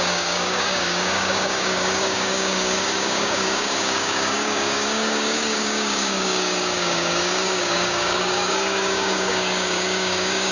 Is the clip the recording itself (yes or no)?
no